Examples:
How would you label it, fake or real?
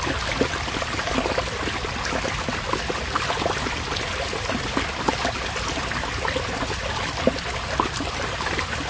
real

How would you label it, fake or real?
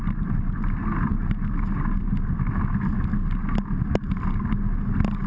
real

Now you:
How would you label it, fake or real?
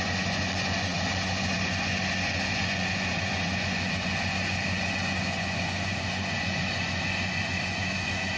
fake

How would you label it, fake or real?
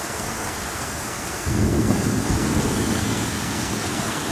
fake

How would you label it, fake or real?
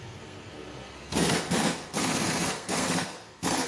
fake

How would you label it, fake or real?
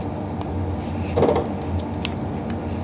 real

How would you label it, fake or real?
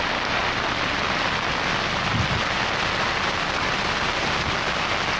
real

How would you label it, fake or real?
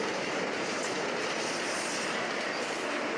real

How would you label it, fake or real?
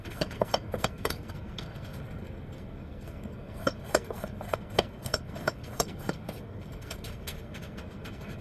fake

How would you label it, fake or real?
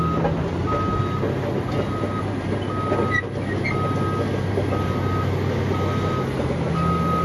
real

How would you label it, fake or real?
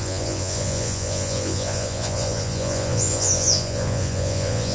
fake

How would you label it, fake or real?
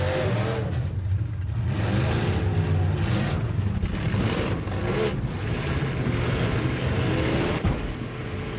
real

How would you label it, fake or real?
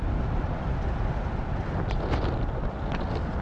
real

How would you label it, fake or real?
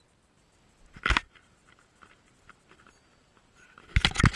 real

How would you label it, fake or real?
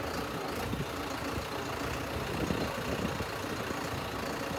real